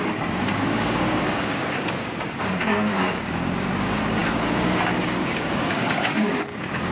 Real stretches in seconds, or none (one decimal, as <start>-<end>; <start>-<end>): none